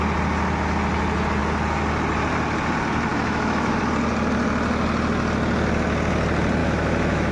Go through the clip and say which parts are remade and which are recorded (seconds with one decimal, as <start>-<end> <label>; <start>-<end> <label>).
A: 0.0-3.1 recorded; 3.1-3.8 remade; 3.8-6.6 recorded; 6.6-7.3 remade